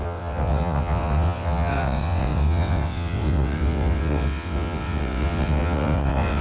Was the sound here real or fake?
fake